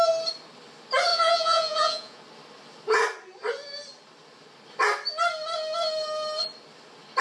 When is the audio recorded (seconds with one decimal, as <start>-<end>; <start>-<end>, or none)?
0.0-1.1; 2.2-7.2